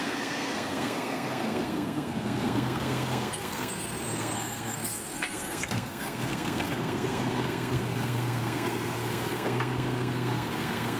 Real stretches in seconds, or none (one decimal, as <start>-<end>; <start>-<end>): none